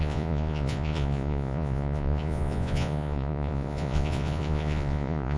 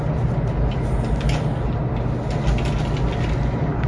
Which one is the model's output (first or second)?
first